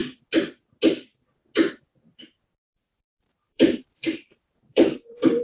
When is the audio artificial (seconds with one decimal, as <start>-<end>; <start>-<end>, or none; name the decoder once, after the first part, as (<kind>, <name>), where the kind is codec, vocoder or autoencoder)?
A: 2.1-5.4 (vocoder, BigVGAN v2)